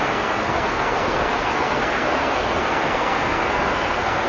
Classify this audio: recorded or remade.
remade